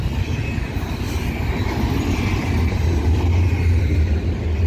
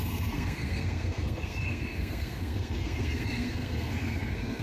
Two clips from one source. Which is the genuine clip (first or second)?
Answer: first